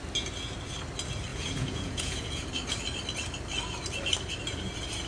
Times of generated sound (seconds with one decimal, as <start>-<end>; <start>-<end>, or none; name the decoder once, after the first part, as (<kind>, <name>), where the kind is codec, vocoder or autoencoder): 1.3-2.5 (vocoder, Vocos)